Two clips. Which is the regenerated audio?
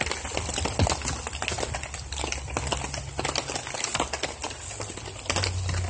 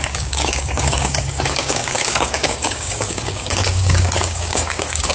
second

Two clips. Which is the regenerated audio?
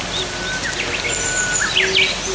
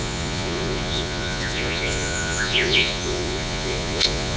second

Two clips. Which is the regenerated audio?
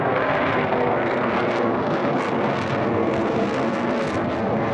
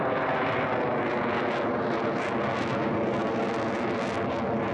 first